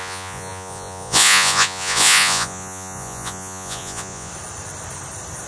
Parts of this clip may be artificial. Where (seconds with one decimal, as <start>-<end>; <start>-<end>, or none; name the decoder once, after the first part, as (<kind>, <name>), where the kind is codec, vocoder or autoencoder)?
0.0-4.3 (vocoder, Vocos)